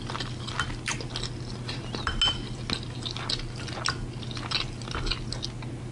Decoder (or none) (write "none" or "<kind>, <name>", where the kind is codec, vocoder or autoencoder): none